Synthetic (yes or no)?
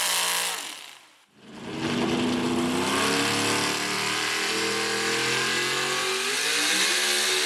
no